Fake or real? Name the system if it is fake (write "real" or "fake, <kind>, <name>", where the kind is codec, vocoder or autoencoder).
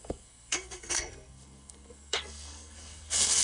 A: fake, codec, SNAC